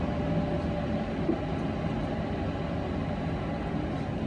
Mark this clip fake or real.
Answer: real